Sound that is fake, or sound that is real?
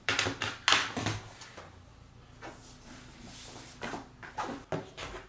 real